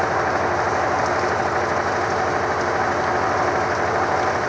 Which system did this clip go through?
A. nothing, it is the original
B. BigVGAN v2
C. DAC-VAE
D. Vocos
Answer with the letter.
A